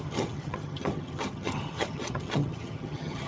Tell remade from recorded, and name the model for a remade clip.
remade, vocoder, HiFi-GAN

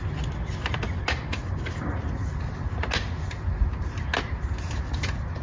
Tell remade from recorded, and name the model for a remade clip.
recorded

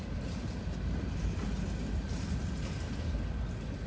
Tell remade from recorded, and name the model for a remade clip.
recorded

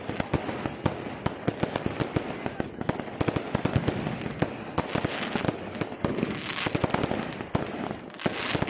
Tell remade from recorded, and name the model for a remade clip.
recorded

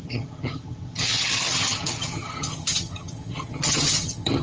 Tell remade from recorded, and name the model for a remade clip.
remade, vocoder, HiFi-GAN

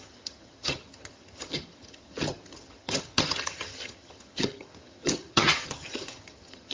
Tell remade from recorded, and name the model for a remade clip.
remade, vocoder, HiFi-GAN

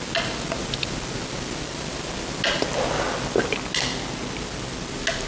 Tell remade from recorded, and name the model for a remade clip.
recorded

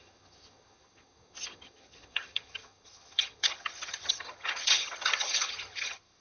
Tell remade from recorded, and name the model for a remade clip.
remade, vocoder, HiFi-GAN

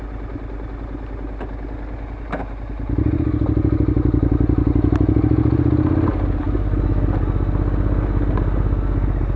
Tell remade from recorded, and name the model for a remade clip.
recorded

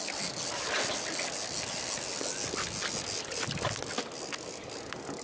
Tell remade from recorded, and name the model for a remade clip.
recorded